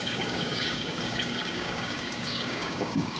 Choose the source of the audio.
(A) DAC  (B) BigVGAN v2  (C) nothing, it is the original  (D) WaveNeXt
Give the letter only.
A